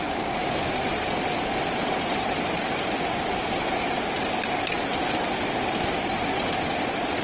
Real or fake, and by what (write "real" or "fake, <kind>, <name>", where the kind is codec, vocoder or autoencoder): real